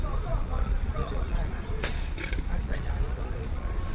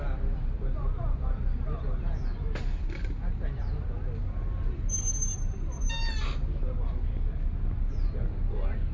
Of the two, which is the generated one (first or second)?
first